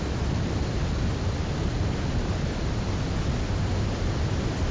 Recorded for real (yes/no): yes